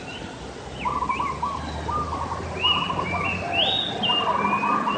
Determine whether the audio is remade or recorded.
recorded